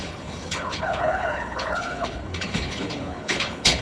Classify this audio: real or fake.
fake